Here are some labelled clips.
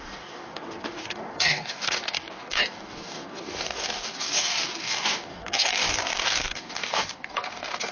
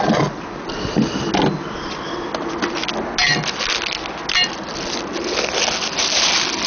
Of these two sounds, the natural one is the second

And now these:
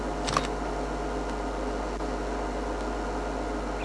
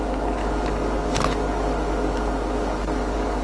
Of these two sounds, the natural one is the first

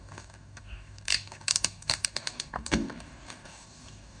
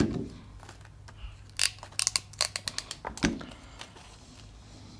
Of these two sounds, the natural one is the second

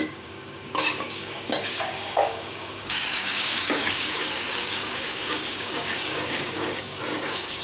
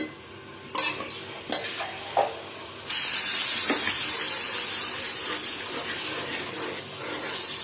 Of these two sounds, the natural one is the second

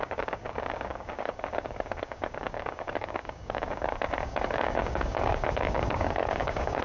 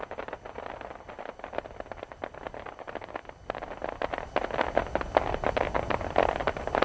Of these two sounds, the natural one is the second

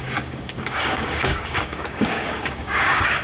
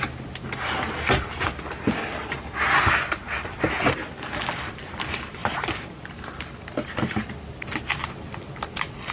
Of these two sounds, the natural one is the second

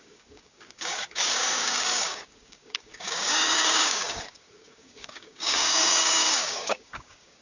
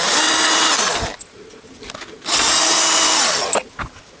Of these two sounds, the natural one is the second